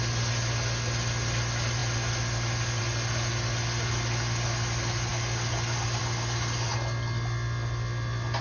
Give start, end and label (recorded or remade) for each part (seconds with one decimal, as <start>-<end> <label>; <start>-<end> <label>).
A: 0.0-8.4 recorded